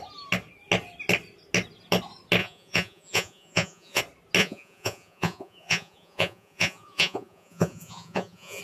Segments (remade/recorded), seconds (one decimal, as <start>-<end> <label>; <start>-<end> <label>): 0.0-2.4 recorded; 2.4-4.0 remade; 4.0-4.4 recorded; 4.4-8.6 remade

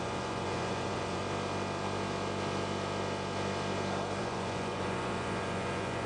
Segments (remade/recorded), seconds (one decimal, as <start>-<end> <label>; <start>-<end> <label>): 0.0-1.2 remade; 1.2-4.2 recorded; 4.2-6.1 remade

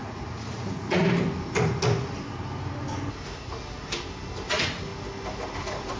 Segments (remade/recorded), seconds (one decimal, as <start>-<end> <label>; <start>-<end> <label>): 0.0-1.0 remade; 1.0-4.5 recorded; 4.5-4.9 remade; 4.9-5.6 recorded; 5.6-6.0 remade

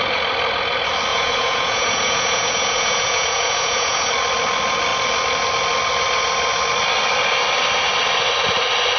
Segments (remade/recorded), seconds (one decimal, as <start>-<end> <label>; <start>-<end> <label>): 0.0-1.1 recorded; 1.1-4.1 remade; 4.1-9.0 recorded

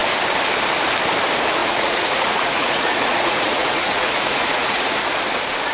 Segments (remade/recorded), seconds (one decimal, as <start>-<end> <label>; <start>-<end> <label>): 0.0-1.6 recorded; 1.6-5.0 remade; 5.0-5.7 recorded

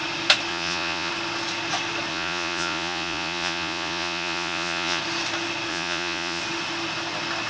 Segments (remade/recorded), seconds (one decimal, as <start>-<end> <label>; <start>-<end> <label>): 0.0-0.5 recorded; 0.5-1.1 remade; 1.1-2.1 recorded; 2.1-5.0 remade; 5.0-5.7 recorded; 5.7-6.4 remade; 6.4-7.5 recorded

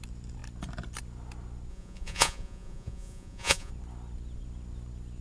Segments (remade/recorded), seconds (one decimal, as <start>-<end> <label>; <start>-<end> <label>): 0.0-1.7 recorded; 1.7-3.7 remade; 3.7-5.2 recorded

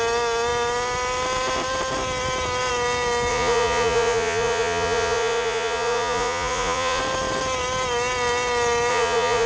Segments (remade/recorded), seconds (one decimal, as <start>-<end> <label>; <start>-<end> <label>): 0.0-3.3 recorded; 3.3-7.0 remade; 7.0-8.9 recorded; 8.9-9.5 remade